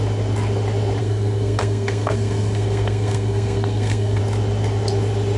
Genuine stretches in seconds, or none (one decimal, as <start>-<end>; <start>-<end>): 0.0-1.0; 4.2-5.4